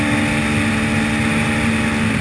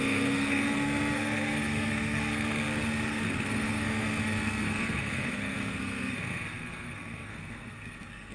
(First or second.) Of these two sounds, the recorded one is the first